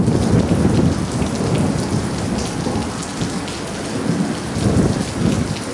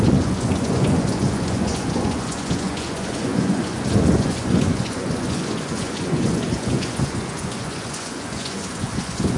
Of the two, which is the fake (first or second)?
second